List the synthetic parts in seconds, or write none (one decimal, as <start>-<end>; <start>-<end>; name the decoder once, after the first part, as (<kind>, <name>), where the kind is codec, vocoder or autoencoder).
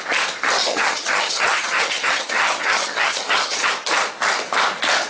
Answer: 0.6-3.7 (vocoder, HiFi-GAN)